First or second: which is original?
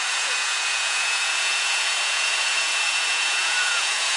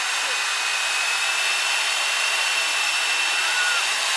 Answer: second